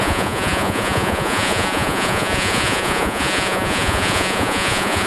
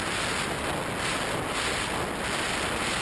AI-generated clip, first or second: first